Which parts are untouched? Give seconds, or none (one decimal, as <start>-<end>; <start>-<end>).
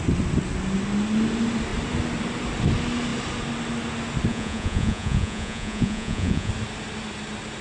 0.0-4.3; 6.5-7.6